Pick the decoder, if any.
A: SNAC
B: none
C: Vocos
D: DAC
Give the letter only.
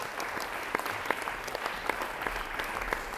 B